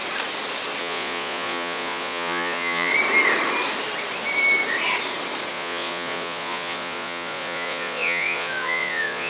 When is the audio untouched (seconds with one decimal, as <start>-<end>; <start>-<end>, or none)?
0.0-0.8; 2.9-5.5